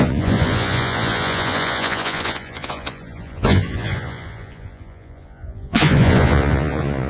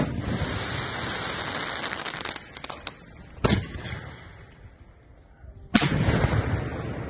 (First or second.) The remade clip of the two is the first